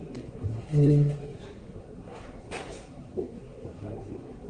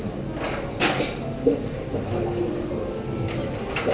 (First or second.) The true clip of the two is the second